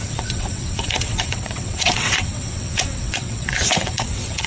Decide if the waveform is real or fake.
fake